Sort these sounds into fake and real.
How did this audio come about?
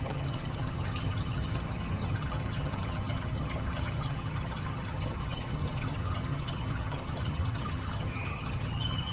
fake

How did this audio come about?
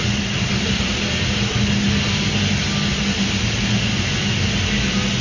real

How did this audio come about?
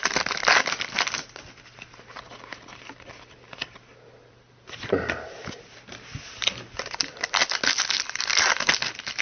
real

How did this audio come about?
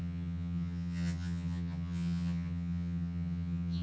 fake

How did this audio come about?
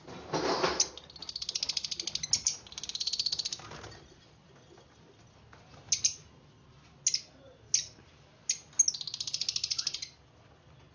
real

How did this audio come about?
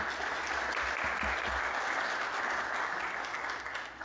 real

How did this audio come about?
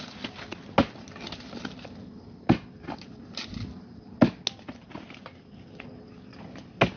real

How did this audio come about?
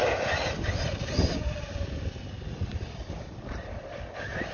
real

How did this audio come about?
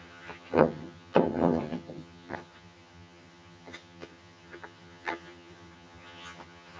fake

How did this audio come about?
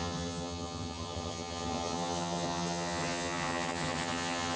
fake